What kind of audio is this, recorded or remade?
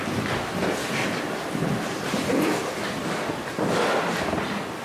recorded